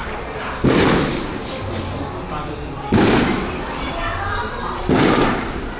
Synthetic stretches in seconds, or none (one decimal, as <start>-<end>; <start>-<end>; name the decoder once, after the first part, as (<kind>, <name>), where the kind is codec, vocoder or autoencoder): none

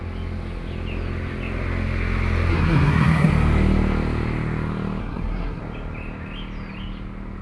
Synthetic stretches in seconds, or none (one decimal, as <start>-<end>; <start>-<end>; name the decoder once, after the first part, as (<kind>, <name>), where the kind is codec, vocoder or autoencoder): 2.5-3.3 (codec, SNAC); 5.0-5.6

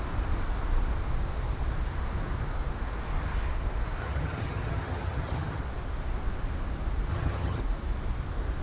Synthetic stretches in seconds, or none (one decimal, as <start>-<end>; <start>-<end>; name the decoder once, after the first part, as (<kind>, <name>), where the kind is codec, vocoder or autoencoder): 4.0-5.6 (vocoder, HiFi-GAN); 7.1-7.6

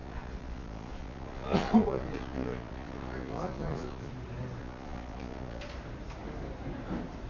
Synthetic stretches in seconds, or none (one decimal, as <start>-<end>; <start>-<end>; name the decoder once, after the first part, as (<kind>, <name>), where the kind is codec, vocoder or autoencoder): 0.0-4.1 (vocoder, Vocos); 4.6-5.6